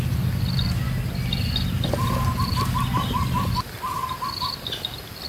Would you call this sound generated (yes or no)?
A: no